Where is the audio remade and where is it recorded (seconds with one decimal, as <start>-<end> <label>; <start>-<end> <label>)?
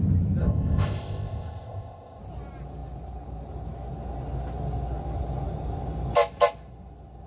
0.0-0.4 recorded; 0.4-2.2 remade; 2.2-7.3 recorded